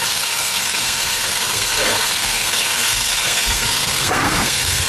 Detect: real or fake fake